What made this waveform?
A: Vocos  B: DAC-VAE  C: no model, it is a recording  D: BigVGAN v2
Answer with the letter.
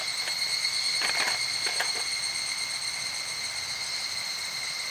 D